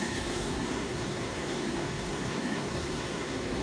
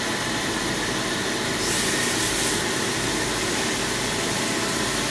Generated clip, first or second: first